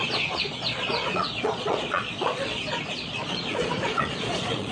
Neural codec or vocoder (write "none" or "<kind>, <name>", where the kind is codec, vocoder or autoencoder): vocoder, Vocos